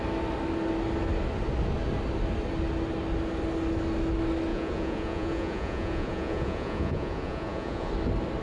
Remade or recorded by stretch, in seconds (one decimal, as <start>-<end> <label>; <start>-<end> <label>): 0.0-4.5 recorded; 4.5-7.9 remade; 7.9-8.4 recorded